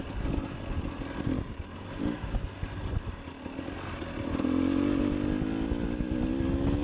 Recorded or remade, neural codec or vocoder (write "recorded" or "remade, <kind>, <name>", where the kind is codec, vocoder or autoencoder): recorded